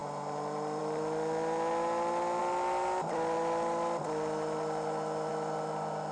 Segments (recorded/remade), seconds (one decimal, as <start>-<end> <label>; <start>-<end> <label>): 0.0-6.1 recorded